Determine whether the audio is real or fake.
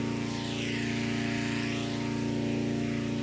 real